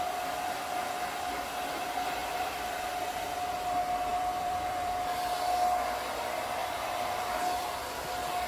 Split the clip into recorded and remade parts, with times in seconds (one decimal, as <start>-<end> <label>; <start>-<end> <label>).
0.0-2.2 recorded; 2.2-2.9 remade; 2.9-4.1 recorded; 4.1-5.0 remade; 5.0-6.6 recorded; 6.6-7.7 remade; 7.7-8.5 recorded

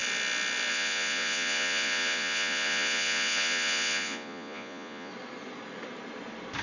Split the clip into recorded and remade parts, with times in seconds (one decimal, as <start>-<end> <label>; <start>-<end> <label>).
0.0-0.7 recorded; 0.7-5.1 remade; 5.1-6.6 recorded

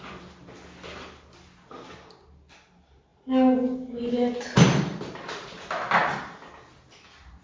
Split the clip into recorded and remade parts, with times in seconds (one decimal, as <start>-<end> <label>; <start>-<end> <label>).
0.0-7.4 recorded

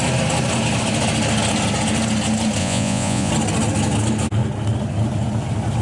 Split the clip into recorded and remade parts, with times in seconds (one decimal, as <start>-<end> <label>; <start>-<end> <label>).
0.0-2.6 recorded; 2.6-3.3 remade; 3.3-5.8 recorded

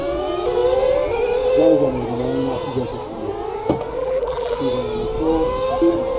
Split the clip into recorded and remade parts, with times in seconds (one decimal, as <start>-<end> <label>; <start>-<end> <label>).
0.0-4.0 recorded; 4.0-4.6 remade; 4.6-6.2 recorded

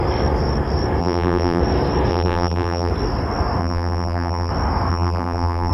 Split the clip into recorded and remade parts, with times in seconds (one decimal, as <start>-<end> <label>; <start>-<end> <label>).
0.0-1.0 recorded; 1.0-1.6 remade; 1.6-2.1 recorded; 2.1-2.9 remade; 2.9-3.6 recorded; 3.6-4.5 remade; 4.5-4.9 recorded; 4.9-5.7 remade

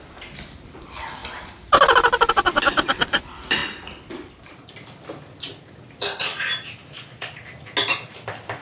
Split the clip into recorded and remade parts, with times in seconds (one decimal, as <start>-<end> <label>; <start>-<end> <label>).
0.0-1.2 remade; 1.2-2.3 recorded; 2.3-6.3 remade; 6.3-7.9 recorded; 7.9-8.6 remade